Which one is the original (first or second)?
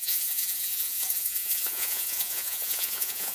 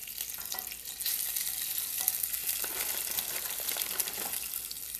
second